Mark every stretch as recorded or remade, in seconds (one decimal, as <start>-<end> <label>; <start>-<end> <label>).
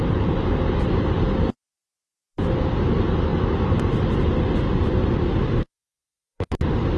0.0-5.6 recorded; 5.6-6.5 remade; 6.5-7.0 recorded